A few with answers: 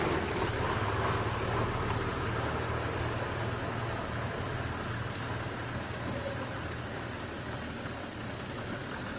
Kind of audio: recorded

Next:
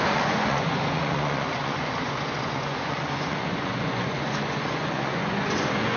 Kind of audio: remade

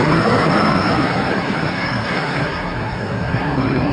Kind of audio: remade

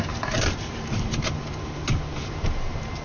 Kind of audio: remade